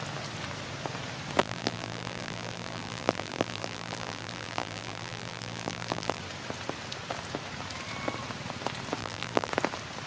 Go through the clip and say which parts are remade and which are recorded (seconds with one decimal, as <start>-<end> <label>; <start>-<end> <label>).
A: 0.0-1.4 recorded; 1.4-6.2 remade; 6.2-9.0 recorded; 9.0-9.5 remade; 9.5-10.1 recorded